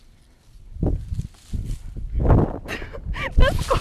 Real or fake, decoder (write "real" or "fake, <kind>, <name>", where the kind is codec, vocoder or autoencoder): real